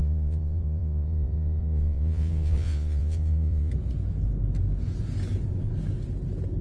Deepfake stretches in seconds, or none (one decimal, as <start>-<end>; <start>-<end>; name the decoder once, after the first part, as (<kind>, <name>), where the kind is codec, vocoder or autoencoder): 0.0-3.7 (vocoder, Vocos)